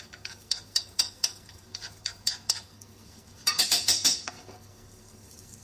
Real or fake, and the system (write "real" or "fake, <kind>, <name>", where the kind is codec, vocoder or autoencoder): fake, codec, SNAC